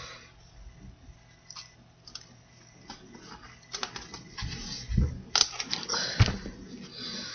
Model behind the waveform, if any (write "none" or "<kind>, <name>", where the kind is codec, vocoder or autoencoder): none